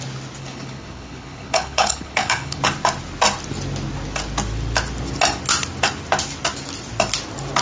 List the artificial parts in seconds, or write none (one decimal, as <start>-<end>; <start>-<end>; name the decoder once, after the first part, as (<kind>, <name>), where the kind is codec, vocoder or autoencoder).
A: 0.4-2.6 (codec, HILCodec)